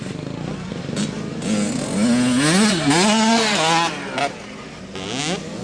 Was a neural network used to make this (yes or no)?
no